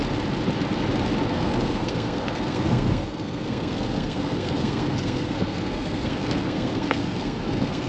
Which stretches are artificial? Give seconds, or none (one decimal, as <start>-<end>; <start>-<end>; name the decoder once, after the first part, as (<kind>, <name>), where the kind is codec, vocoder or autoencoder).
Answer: 1.3-7.9 (codec, SNAC)